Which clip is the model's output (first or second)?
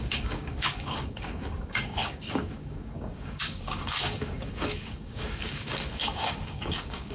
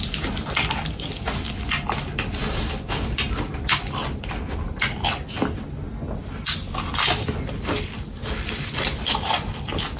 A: first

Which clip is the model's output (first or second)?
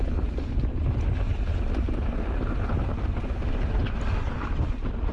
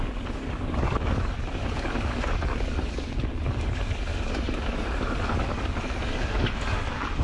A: second